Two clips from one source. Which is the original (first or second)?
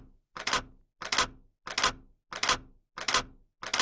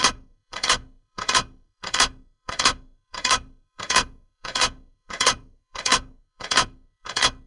first